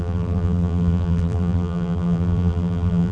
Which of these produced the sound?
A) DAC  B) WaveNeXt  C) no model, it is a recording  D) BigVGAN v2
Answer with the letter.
D